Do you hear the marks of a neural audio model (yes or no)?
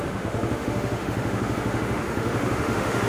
yes